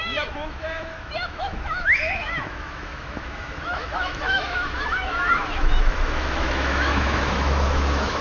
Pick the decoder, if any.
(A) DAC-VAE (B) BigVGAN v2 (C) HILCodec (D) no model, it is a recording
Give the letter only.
A